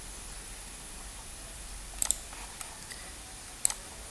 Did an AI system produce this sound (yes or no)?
no